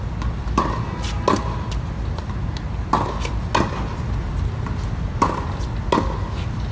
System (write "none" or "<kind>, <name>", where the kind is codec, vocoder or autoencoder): none